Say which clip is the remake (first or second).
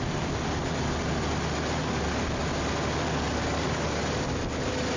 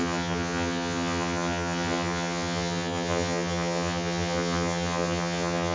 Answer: second